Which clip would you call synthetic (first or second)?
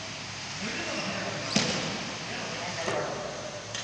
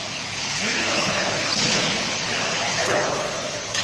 second